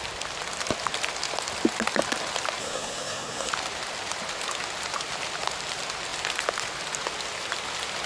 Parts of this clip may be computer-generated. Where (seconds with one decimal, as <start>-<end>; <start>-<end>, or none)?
2.6-3.5

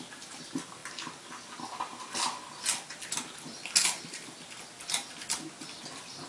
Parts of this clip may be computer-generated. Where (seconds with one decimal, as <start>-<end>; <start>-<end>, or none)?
none

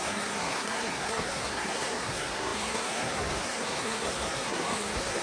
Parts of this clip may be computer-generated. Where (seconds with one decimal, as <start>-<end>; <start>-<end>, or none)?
0.0-5.2

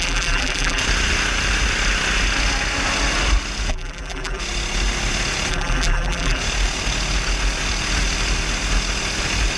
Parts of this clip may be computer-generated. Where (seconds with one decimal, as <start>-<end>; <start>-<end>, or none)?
0.0-0.8; 3.7-4.4; 5.5-6.4

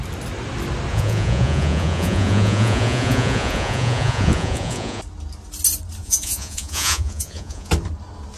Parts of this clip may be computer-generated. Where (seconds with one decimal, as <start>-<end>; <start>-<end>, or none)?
0.9-5.0; 6.0-7.7

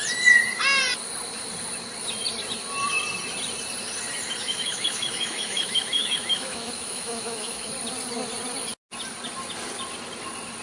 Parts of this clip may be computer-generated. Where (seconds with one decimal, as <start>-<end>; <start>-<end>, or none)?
4.4-7.7

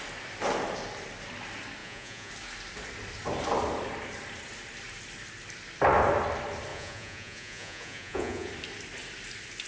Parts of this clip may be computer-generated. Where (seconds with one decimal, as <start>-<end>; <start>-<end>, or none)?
1.8-2.3; 6.7-8.5

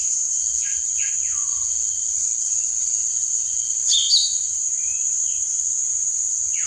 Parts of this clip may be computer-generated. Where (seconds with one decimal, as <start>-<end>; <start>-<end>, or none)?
0.4-1.1; 1.5-4.1